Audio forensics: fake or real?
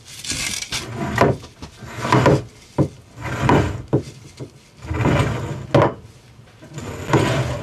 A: real